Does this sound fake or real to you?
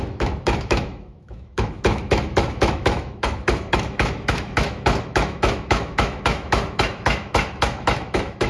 fake